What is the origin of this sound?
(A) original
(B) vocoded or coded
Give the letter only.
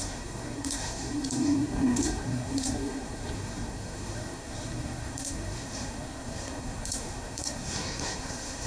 B